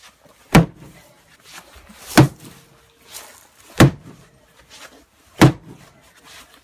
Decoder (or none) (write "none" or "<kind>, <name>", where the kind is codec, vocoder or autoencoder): none